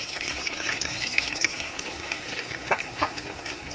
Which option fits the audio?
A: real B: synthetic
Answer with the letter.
B